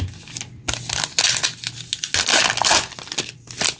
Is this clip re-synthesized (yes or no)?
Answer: no